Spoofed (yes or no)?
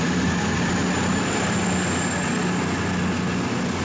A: no